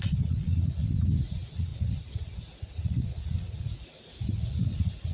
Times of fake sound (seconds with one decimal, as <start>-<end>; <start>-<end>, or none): 0.0-5.1